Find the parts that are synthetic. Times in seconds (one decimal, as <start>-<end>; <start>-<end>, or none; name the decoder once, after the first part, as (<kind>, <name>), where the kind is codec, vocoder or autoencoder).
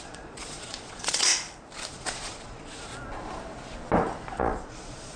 0.0-1.3 (vocoder, Vocos); 1.9-2.9; 4.4-5.2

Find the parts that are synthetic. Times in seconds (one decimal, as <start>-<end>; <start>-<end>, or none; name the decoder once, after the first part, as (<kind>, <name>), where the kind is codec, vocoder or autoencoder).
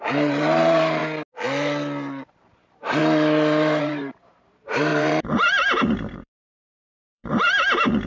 0.0-1.0 (vocoder, BigVGAN v2); 2.5-3.0; 3.8-8.1